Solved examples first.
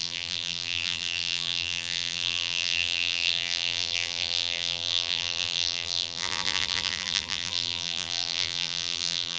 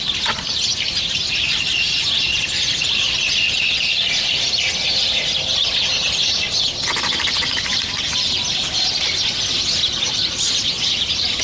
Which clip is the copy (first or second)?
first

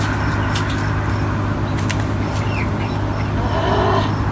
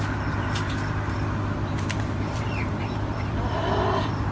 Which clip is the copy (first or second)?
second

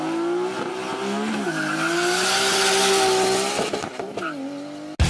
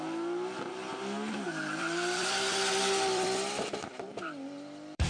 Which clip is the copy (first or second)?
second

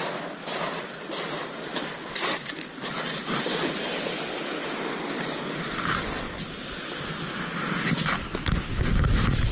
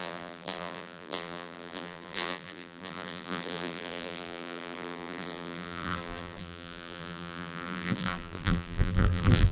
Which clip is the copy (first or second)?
second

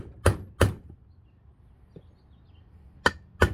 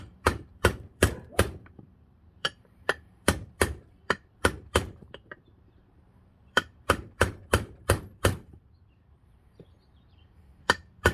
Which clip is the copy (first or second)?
second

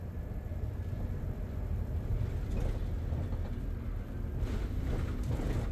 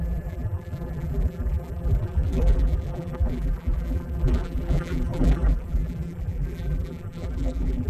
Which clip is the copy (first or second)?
second